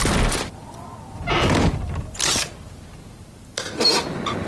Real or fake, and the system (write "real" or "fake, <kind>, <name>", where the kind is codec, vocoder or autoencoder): real